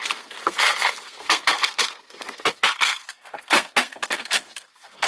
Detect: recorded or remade remade